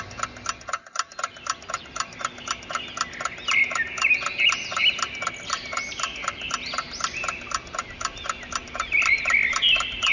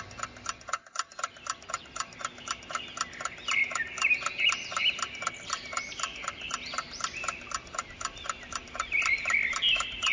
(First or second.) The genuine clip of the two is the first